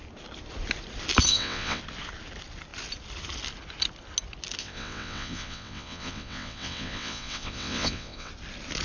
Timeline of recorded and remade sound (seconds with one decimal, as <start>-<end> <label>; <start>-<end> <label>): 0.0-1.3 recorded; 1.3-1.8 remade; 1.8-4.6 recorded; 4.6-8.3 remade; 8.3-8.8 recorded